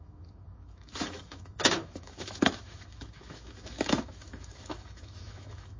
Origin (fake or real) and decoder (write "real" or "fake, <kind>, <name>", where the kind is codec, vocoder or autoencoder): fake, autoencoder, DAC-VAE